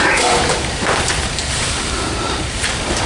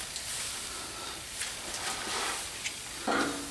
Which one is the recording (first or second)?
second